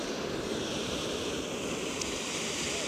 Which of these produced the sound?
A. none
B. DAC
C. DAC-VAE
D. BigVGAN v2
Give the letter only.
D